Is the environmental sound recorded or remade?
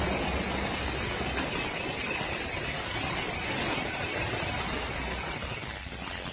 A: recorded